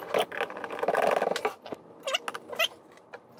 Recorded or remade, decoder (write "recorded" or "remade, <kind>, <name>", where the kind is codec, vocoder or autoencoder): recorded